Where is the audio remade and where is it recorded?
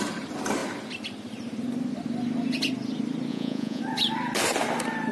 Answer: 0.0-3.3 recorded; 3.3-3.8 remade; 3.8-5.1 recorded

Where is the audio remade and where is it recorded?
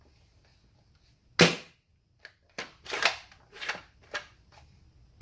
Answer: 0.0-5.2 recorded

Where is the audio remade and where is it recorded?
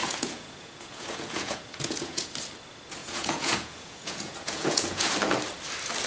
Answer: 0.0-2.3 remade; 2.3-3.0 recorded; 3.0-5.1 remade; 5.1-6.1 recorded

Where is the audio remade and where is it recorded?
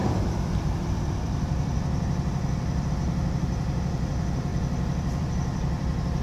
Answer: 0.0-4.5 remade; 4.5-5.2 recorded; 5.2-6.2 remade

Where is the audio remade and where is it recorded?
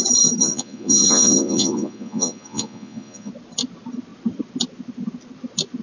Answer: 0.0-0.4 recorded; 0.4-3.3 remade; 3.3-5.8 recorded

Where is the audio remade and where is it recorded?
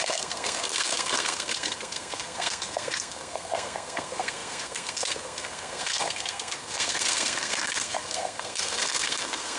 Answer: 0.0-9.6 remade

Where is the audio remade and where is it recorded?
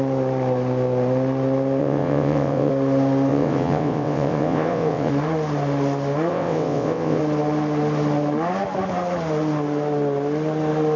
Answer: 0.0-1.8 recorded; 1.8-2.7 remade; 2.7-3.3 recorded; 3.3-5.1 remade; 5.1-6.3 recorded; 6.3-7.2 remade; 7.2-11.0 recorded